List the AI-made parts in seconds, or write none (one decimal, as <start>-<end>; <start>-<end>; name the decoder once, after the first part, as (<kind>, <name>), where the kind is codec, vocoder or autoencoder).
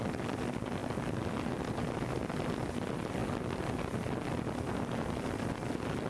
none